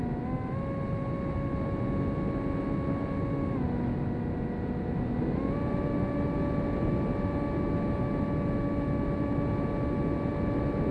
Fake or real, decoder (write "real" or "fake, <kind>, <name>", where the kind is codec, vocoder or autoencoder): real